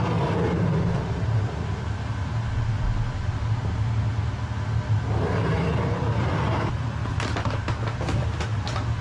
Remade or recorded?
recorded